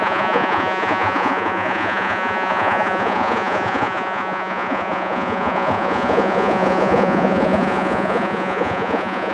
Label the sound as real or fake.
fake